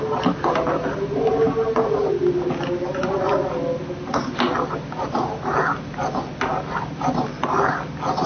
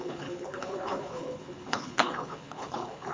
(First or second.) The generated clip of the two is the second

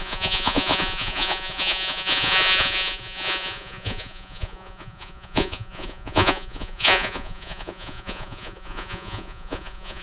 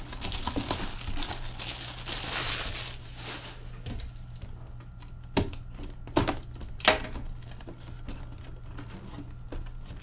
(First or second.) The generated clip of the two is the first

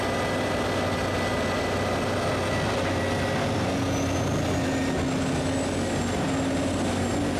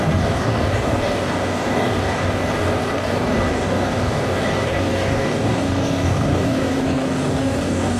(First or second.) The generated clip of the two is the second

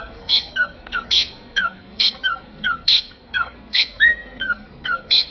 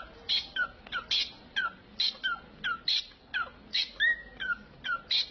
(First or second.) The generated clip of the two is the first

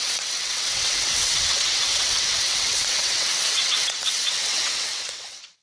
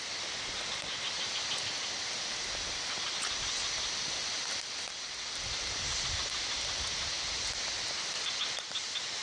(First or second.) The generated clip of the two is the first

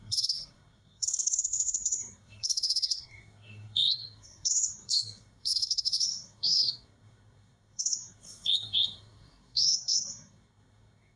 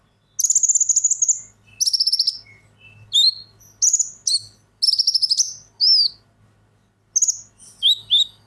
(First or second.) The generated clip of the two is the first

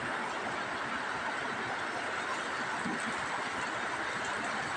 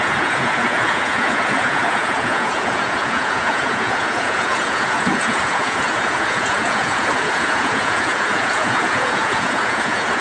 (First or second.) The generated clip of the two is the second